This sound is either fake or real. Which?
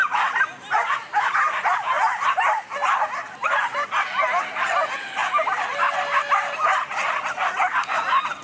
real